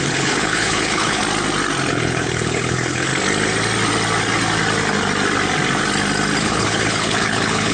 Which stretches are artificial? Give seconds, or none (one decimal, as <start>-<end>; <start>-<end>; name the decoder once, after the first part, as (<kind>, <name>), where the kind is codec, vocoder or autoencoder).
0.0-1.2 (codec, HILCodec); 1.9-3.1; 6.4-7.7